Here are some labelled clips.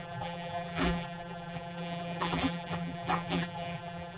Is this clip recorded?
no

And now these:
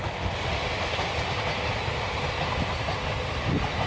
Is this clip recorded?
yes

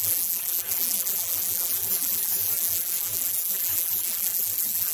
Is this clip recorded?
no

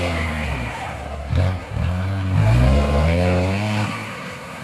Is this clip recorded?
no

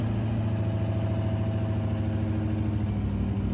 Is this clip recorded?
yes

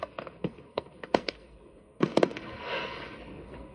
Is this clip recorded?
no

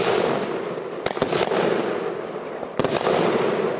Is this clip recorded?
yes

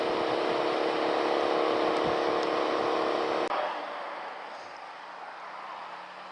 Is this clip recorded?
yes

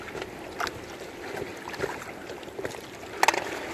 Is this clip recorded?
yes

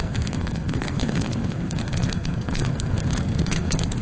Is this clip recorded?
no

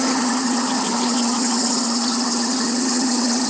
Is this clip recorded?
no